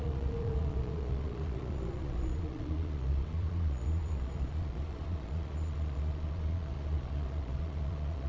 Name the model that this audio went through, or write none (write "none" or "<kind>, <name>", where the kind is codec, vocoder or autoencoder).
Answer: vocoder, Vocos